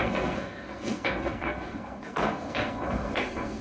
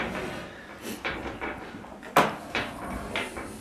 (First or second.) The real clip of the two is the second